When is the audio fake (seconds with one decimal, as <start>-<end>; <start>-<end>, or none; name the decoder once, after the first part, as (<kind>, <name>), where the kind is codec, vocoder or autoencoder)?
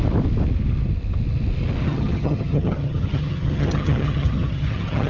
1.8-5.1 (vocoder, HiFi-GAN)